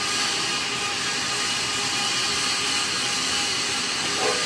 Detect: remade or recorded recorded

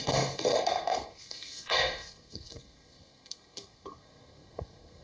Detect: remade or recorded remade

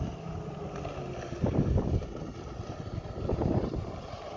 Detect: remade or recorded recorded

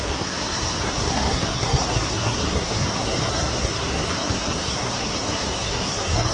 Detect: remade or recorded remade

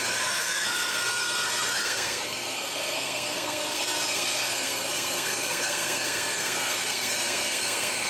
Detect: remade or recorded remade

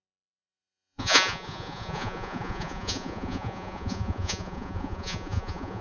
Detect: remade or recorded remade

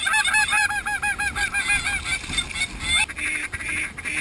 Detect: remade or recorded recorded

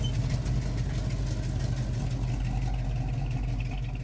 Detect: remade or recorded recorded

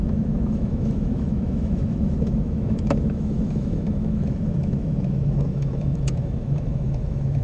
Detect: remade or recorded remade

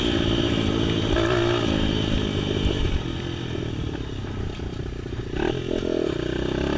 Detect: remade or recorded recorded